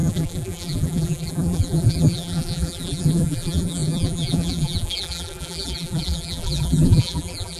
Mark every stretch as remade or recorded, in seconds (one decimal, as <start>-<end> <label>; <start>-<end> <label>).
0.0-7.6 remade